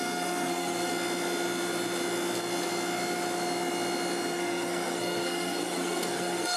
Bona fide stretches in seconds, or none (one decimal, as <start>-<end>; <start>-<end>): 0.9-4.3